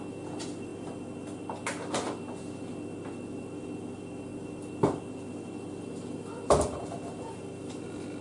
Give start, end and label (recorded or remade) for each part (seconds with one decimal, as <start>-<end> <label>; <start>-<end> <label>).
0.0-8.2 recorded